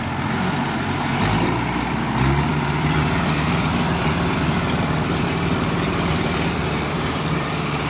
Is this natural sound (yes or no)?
no